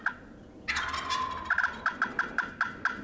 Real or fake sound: real